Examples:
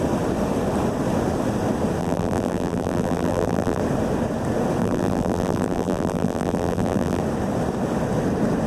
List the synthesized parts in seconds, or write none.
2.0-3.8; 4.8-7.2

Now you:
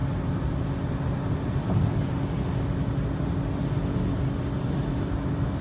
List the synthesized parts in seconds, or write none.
none

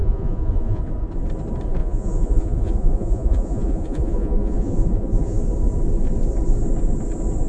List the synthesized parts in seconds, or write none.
0.0-0.8; 1.8-5.4